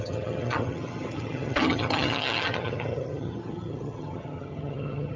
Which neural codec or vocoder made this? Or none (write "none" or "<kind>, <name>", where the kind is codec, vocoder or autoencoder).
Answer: vocoder, HiFi-GAN